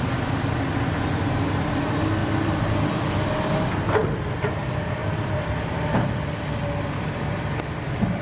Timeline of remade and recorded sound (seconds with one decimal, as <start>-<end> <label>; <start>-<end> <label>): 0.0-2.2 recorded; 2.2-3.2 remade; 3.2-5.0 recorded; 5.0-8.2 remade